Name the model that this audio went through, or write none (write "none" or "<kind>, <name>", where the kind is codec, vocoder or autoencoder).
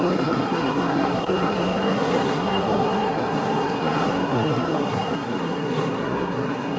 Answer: codec, SNAC